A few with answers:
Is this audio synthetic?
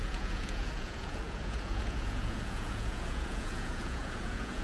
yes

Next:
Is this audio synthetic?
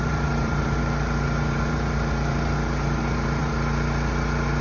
yes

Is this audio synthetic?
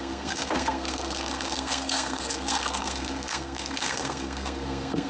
yes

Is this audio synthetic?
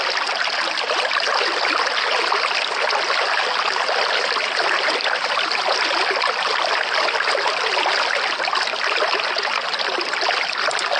no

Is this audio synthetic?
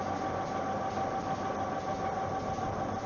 no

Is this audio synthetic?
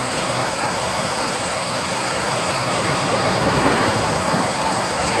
yes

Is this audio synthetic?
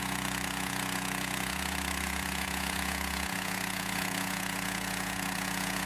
yes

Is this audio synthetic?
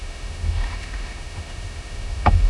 yes